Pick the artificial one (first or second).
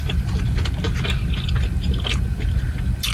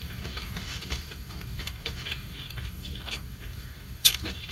second